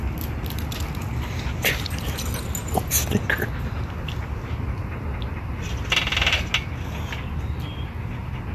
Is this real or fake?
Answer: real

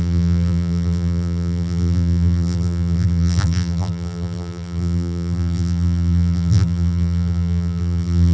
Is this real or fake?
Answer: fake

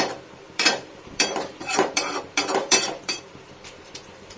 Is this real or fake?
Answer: fake